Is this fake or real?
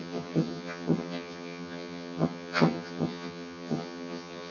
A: fake